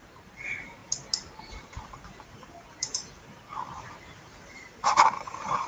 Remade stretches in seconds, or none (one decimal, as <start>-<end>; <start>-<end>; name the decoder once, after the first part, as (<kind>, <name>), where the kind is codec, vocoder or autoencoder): 0.0-0.8 (vocoder, BigVGAN v2); 1.4-5.7